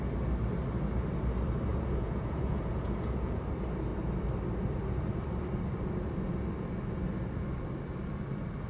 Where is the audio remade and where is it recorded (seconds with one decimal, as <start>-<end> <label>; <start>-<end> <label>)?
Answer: 0.0-1.7 recorded; 1.7-3.4 remade; 3.4-8.7 recorded